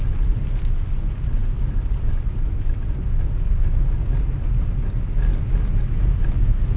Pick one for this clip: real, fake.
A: real